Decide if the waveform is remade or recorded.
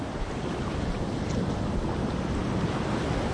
recorded